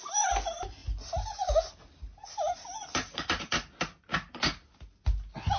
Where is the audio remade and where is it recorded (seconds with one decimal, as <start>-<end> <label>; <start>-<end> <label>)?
0.0-5.6 recorded